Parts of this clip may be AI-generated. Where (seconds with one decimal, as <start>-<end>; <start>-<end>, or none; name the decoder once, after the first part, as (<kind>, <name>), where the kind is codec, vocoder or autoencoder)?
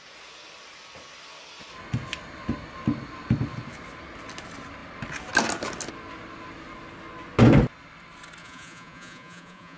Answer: 8.4-9.8 (vocoder, Vocos)